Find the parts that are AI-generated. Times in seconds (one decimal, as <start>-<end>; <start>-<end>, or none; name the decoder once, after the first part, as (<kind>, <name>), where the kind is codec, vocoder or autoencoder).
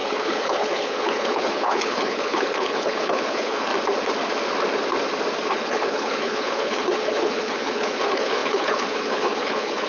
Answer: 0.0-3.7 (codec, HILCodec); 5.5-9.9